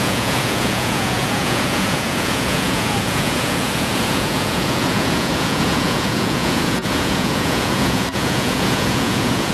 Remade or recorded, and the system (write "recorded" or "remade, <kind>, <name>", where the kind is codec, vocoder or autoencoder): remade, vocoder, Vocos